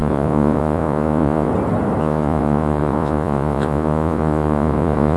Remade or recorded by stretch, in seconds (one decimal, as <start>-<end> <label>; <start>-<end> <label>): 0.0-1.5 remade; 1.5-2.0 recorded; 2.0-5.2 remade